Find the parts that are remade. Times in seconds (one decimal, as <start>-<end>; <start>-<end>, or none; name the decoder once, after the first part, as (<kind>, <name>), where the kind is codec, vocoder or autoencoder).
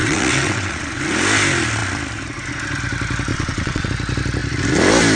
0.0-1.0 (vocoder, WaveNeXt); 3.3-3.9